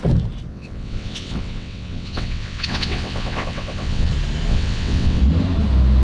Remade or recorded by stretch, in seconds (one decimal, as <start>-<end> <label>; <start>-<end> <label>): 0.0-0.5 recorded; 0.5-4.1 remade; 4.1-4.5 recorded; 4.5-5.2 remade; 5.2-6.0 recorded